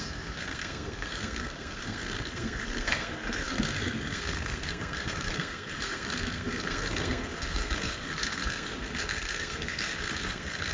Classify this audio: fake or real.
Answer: fake